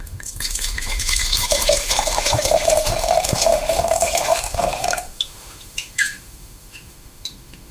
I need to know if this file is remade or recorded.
remade